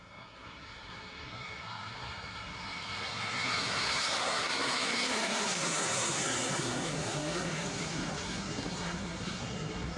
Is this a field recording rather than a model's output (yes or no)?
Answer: no